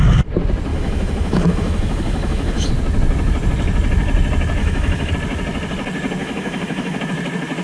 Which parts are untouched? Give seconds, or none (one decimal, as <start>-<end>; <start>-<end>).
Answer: 0.0-0.7; 2.7-4.6; 5.1-6.2; 7.0-7.6